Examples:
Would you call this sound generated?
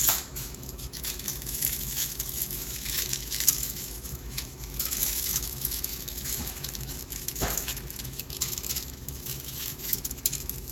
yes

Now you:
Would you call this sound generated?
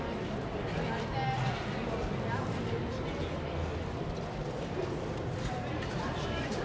no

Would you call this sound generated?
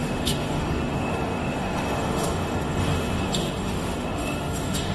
yes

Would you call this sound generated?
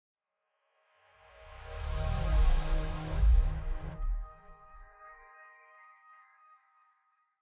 yes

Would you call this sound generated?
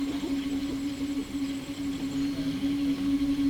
no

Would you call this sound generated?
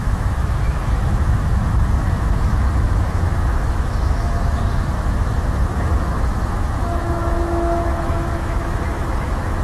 yes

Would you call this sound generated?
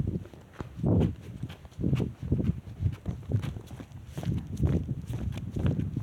no